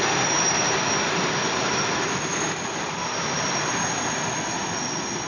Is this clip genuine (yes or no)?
yes